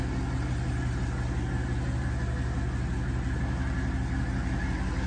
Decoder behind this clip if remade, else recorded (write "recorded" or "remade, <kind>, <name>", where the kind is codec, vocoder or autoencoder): recorded